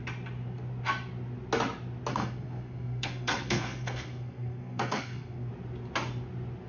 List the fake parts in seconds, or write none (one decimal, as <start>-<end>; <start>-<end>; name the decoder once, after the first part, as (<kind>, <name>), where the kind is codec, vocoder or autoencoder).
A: 2.1-5.5 (codec, SNAC)